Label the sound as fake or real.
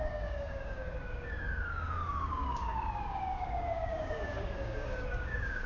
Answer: fake